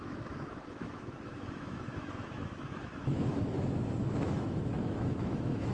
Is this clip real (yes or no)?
no